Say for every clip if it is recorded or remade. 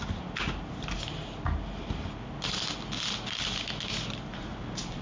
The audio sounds recorded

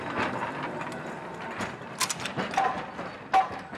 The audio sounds recorded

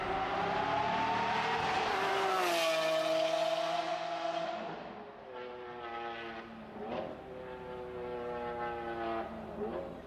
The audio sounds recorded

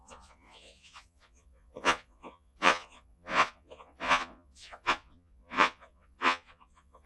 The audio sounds remade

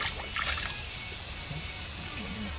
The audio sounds recorded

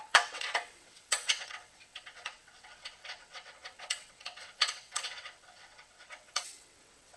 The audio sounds remade